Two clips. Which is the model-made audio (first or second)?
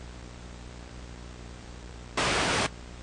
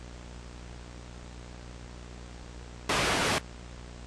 first